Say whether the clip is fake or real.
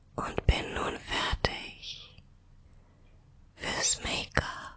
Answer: real